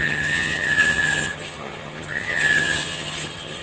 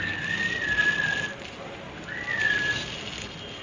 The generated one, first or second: first